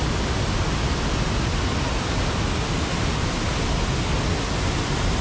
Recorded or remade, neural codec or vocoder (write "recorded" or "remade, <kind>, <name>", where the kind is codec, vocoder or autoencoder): recorded